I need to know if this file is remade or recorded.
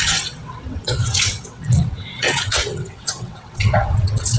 remade